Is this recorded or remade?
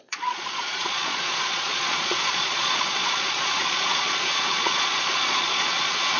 remade